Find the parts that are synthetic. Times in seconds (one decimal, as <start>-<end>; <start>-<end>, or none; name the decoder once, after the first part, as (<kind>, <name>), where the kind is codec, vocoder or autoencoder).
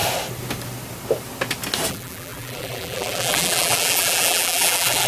1.9-5.1 (vocoder, BigVGAN v2)